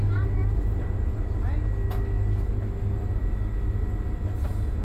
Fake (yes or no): no